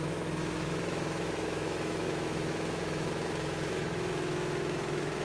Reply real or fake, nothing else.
fake